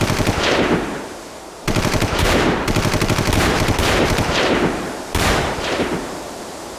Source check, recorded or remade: remade